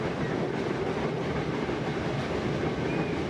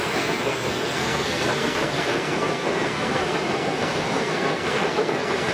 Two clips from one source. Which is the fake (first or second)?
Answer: second